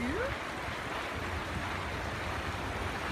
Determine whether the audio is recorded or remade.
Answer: recorded